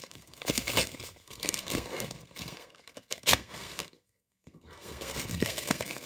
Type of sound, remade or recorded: remade